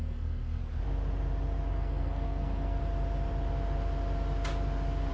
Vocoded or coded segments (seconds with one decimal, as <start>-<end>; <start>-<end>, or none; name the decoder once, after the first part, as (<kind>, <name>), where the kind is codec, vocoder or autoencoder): 0.0-0.6 (codec, SNAC); 1.7-2.8